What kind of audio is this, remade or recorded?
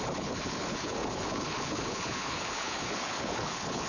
remade